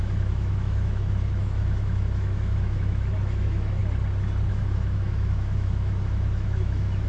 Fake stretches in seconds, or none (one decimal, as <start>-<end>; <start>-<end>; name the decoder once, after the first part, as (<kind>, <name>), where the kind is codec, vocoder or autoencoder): 0.0-3.8 (autoencoder, DAC-VAE); 4.5-7.1